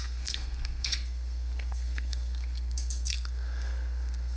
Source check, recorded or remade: remade